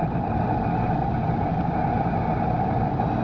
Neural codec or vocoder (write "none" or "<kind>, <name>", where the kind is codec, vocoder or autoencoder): none